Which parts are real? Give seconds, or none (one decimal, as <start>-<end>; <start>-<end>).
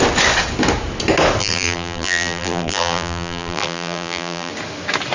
0.0-1.4; 4.5-5.1